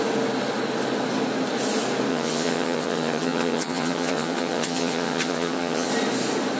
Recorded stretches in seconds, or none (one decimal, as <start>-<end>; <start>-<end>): 0.0-2.1; 5.9-6.6